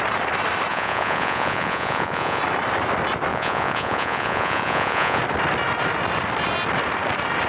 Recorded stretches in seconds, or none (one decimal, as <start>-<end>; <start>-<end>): 0.0-0.7; 2.4-3.3; 5.2-7.5